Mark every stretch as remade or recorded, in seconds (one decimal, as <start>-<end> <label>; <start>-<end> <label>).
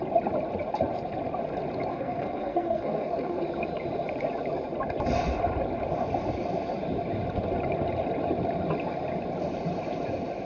0.0-1.9 recorded; 1.9-3.4 remade; 3.4-10.4 recorded